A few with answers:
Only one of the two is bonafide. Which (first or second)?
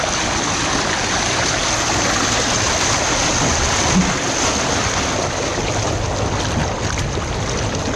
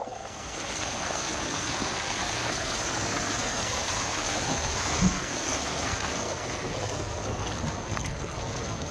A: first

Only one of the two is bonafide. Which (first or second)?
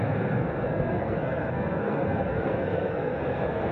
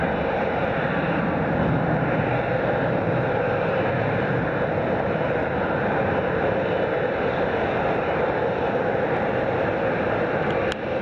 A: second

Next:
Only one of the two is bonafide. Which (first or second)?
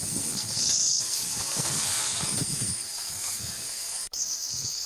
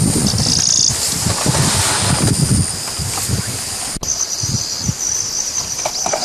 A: second